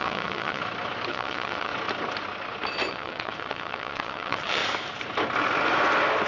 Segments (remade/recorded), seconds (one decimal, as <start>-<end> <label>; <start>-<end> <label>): 0.0-0.6 remade; 0.6-1.1 recorded; 1.1-1.7 remade; 1.7-2.9 recorded; 2.9-4.6 remade; 4.6-6.3 recorded